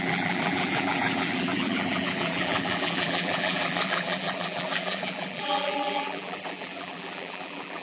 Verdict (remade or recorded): remade